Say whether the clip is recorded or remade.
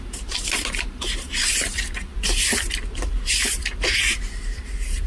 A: remade